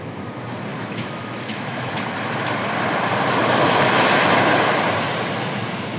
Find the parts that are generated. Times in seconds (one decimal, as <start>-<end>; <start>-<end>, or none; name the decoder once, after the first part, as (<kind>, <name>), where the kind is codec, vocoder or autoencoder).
0.7-1.9 (autoencoder, DAC-VAE)